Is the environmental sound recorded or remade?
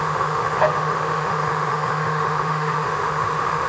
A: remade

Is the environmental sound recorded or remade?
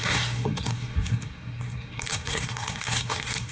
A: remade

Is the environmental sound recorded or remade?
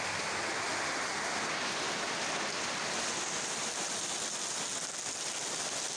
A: recorded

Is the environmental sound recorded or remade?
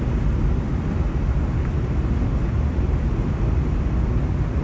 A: recorded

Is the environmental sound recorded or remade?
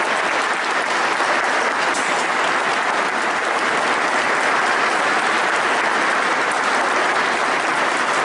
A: recorded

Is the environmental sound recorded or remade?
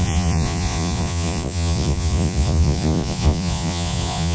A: remade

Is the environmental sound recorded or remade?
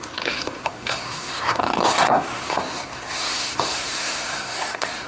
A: remade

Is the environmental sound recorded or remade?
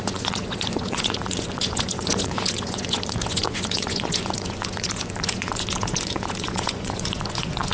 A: remade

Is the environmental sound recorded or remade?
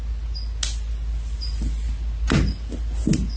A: recorded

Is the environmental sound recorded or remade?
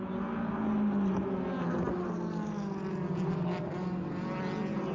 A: recorded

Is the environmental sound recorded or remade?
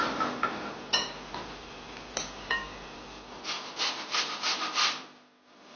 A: recorded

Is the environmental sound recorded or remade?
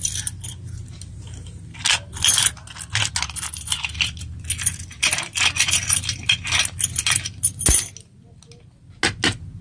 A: recorded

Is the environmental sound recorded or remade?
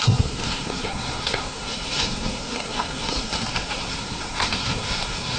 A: remade